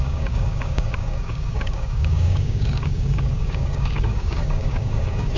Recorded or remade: remade